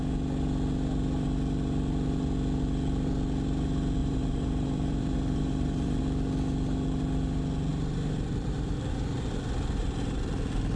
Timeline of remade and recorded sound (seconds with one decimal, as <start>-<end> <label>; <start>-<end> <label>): 0.0-4.0 recorded; 4.0-6.0 remade; 6.0-7.7 recorded; 7.7-10.2 remade; 10.2-10.8 recorded